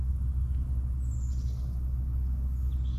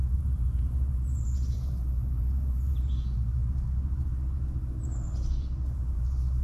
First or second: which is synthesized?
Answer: second